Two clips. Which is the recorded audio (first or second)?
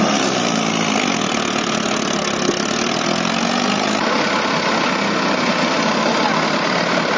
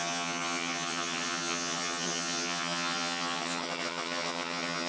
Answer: first